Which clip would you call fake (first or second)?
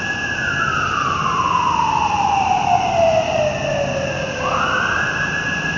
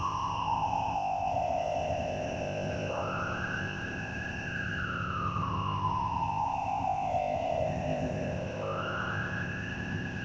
second